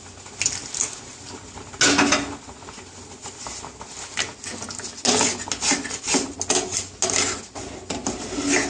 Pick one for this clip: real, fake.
real